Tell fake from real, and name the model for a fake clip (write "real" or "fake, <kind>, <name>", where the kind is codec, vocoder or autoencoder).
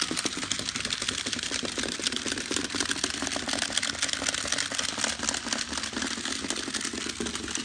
real